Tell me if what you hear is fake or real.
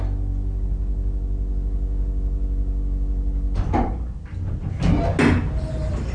real